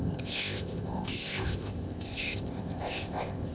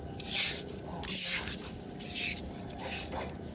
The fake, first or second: first